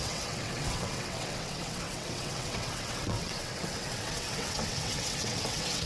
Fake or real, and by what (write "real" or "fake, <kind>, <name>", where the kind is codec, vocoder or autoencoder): fake, vocoder, WaveNeXt